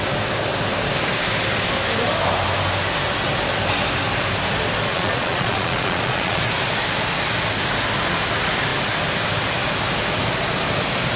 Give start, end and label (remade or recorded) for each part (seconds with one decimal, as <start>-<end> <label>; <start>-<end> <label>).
0.0-4.9 recorded; 4.9-6.4 remade; 6.4-11.2 recorded